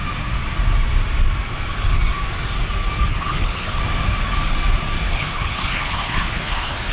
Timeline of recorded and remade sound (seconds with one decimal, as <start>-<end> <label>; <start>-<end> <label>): 0.0-3.1 recorded; 3.1-3.8 remade; 3.8-5.1 recorded; 5.1-6.9 remade